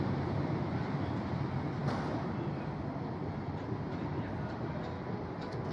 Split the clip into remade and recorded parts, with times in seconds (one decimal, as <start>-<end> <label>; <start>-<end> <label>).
0.0-5.7 recorded